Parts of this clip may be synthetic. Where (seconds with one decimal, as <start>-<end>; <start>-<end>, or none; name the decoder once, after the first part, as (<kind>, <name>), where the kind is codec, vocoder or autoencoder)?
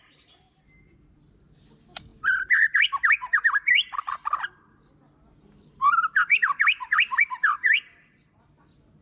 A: none